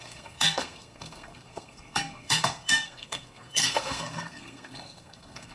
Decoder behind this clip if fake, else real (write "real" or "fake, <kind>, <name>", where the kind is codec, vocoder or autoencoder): fake, codec, SNAC